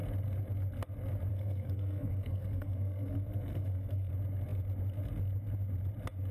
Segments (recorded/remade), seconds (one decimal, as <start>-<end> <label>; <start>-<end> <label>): 0.0-1.3 recorded; 1.3-4.1 remade; 4.1-6.3 recorded